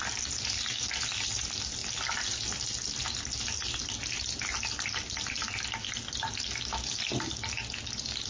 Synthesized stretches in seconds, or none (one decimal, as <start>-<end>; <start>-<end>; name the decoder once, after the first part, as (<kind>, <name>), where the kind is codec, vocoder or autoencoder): none